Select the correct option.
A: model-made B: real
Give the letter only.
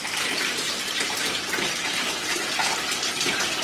A